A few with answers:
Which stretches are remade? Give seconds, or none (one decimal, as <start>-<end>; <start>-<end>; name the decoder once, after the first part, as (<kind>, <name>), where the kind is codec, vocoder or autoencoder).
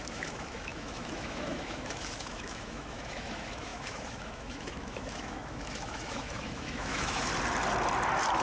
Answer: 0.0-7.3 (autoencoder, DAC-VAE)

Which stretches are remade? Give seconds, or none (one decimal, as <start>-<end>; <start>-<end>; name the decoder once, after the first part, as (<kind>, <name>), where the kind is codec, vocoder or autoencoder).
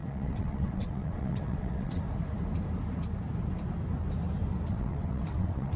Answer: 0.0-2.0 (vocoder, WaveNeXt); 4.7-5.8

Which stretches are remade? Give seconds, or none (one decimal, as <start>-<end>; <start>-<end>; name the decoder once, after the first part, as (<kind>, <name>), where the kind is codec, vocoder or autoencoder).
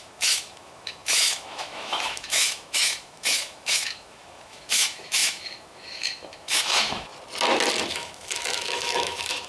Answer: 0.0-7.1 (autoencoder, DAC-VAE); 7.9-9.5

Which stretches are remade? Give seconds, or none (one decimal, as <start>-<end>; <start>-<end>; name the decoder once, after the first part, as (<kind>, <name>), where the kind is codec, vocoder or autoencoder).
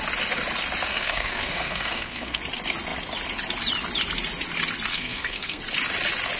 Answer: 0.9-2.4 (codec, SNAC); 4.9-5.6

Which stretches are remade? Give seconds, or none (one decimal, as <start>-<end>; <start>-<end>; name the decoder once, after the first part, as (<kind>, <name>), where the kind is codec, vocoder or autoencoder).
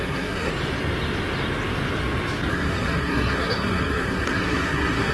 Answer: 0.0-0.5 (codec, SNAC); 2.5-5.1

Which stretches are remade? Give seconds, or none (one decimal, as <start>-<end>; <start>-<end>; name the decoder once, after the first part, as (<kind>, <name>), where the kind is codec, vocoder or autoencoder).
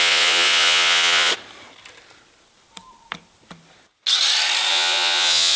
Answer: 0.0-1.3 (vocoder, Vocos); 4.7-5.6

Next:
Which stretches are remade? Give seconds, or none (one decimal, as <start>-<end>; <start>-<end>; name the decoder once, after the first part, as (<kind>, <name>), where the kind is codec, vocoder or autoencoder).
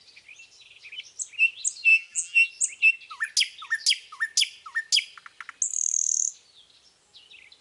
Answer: 1.9-2.5 (vocoder, BigVGAN v2)